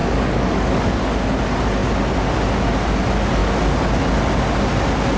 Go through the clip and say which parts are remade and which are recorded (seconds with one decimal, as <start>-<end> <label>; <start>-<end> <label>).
0.0-1.0 remade; 1.0-5.2 recorded

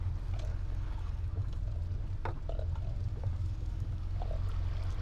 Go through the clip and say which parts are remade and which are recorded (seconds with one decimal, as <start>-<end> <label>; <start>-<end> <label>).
0.0-0.5 recorded; 0.5-1.6 remade; 1.6-3.1 recorded; 3.1-4.2 remade; 4.2-5.0 recorded

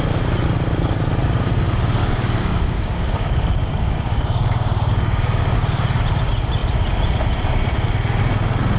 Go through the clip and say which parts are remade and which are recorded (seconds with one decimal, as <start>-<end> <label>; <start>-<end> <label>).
0.0-2.0 recorded; 2.0-5.4 remade; 5.4-8.8 recorded

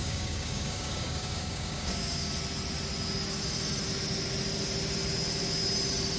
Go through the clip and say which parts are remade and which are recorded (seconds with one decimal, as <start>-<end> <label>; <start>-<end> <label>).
0.0-2.3 remade; 2.3-6.2 recorded

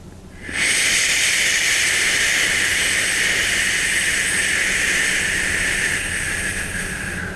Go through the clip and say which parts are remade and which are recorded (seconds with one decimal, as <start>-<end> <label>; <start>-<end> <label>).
0.0-7.4 recorded

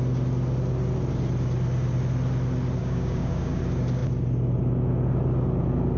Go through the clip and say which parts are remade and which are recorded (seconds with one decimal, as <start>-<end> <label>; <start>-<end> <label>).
0.0-2.8 recorded; 2.8-3.6 remade; 3.6-6.0 recorded

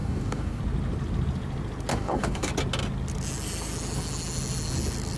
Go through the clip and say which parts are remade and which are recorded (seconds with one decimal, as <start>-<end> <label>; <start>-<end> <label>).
0.0-0.6 remade; 0.6-1.9 recorded; 1.9-2.5 remade; 2.5-5.2 recorded